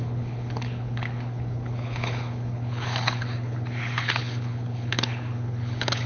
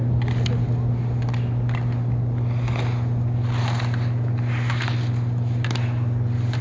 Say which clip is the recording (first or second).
second